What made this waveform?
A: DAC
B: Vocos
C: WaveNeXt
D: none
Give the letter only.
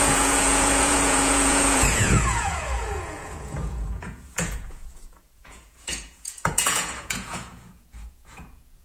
B